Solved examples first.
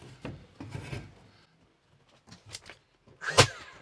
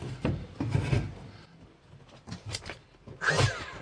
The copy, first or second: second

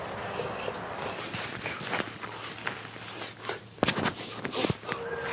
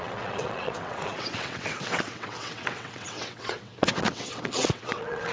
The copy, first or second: second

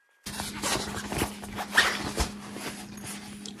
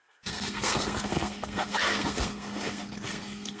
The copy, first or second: second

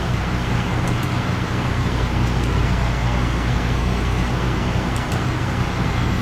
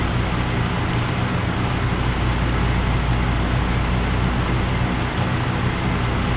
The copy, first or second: first